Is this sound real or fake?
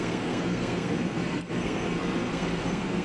fake